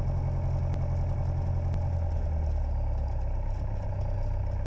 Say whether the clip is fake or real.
real